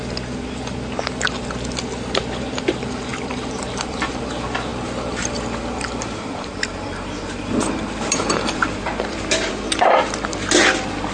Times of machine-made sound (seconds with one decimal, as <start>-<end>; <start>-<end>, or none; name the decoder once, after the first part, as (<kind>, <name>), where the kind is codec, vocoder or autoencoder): 3.1-4.2 (vocoder, BigVGAN v2); 4.7-9.5

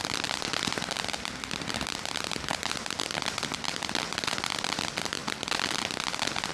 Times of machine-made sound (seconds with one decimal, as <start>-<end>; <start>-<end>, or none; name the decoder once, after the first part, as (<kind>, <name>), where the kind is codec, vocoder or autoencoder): none

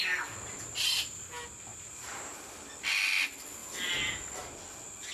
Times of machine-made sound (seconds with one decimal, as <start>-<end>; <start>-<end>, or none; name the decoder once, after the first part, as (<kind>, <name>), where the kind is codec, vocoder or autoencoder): 1.7-2.4 (vocoder, BigVGAN v2)

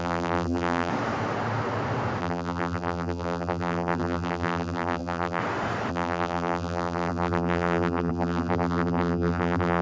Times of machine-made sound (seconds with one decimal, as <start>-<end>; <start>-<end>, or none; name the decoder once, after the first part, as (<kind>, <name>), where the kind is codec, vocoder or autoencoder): 0.0-0.9 (vocoder, BigVGAN v2); 2.2-5.4; 5.9-9.8

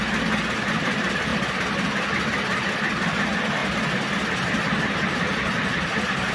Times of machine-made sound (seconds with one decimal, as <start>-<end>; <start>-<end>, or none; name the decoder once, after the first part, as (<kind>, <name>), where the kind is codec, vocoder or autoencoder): none

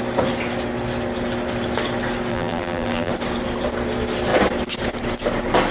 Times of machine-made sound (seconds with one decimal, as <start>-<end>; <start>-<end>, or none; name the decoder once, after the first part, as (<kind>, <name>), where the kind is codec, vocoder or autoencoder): 2.3-3.1 (vocoder, BigVGAN v2)

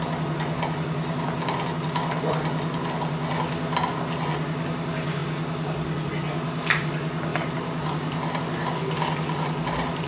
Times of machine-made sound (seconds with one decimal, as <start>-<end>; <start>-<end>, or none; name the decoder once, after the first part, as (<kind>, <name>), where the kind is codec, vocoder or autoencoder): none

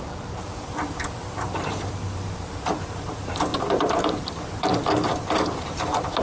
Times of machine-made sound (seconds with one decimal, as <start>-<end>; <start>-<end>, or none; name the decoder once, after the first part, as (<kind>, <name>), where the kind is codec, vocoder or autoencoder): 0.0-4.7 (vocoder, BigVGAN v2); 5.6-6.2